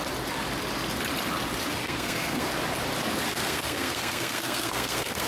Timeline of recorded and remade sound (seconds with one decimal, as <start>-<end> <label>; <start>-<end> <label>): 0.0-1.8 recorded; 1.8-2.5 remade; 2.5-3.3 recorded; 3.3-5.3 remade